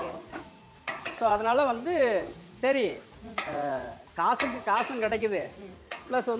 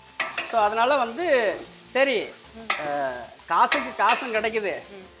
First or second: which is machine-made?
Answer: first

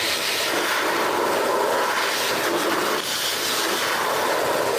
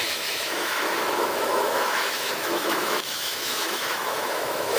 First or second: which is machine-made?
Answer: second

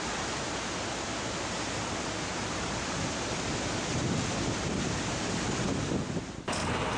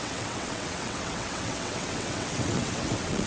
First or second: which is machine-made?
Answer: second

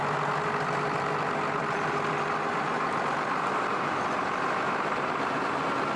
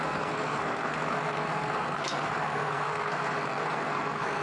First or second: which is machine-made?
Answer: second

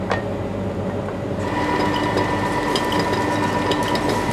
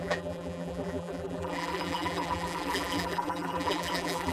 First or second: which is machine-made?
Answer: second